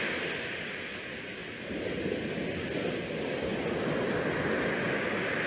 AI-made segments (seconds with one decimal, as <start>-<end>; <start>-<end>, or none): none